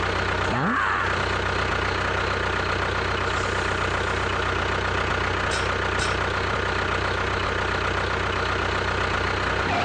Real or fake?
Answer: real